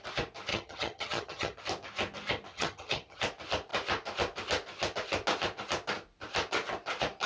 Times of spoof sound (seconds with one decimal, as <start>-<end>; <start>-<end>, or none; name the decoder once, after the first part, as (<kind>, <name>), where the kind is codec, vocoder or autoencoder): 0.5-1.6 (vocoder, HiFi-GAN); 2.5-3.2

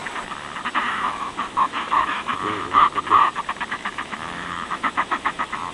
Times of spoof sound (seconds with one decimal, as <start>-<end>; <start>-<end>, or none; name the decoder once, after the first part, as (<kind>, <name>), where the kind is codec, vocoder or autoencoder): 0.9-2.8 (autoencoder, DAC-VAE); 3.7-5.7